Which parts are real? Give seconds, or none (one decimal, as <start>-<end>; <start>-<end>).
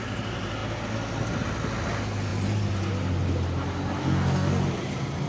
0.0-4.0; 4.6-5.3